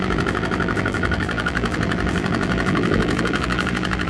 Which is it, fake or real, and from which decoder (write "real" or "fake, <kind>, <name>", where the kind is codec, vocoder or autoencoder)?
fake, vocoder, BigVGAN v2